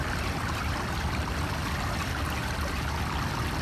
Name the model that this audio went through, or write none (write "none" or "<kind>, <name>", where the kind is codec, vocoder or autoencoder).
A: none